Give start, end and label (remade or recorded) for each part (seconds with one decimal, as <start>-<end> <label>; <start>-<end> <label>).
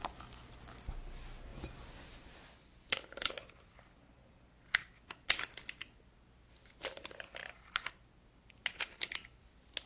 0.0-1.5 recorded; 1.5-5.5 remade; 5.5-7.4 recorded; 7.4-8.5 remade; 8.5-9.9 recorded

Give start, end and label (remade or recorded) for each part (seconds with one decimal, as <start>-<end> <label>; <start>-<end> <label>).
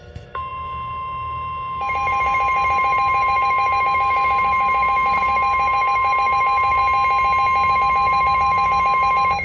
0.0-6.8 remade; 6.8-7.7 recorded; 7.7-9.4 remade